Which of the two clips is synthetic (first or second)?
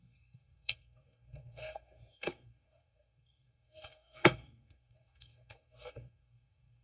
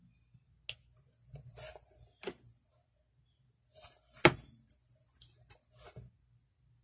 first